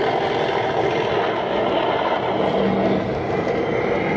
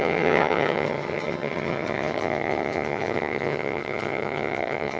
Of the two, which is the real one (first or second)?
first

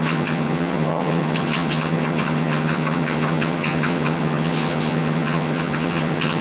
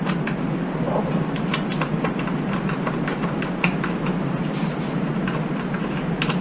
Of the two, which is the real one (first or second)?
second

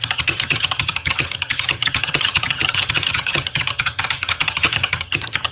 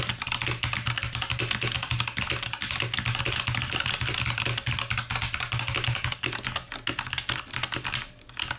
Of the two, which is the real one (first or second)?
second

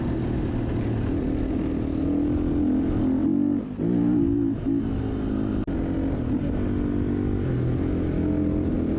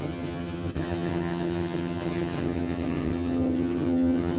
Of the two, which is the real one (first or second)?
first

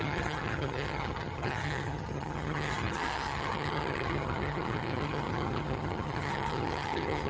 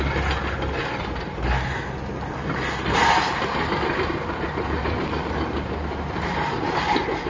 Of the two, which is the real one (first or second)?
second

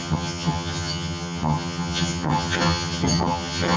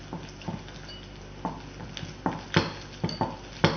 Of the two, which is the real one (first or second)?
second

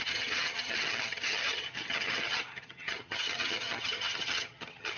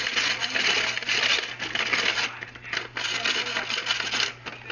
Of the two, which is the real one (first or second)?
second